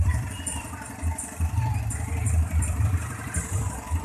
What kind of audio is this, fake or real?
fake